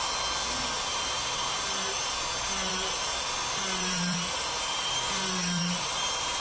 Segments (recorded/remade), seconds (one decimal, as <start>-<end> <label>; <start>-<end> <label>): 0.0-0.9 recorded; 0.9-2.1 remade; 2.1-2.7 recorded; 2.7-6.4 remade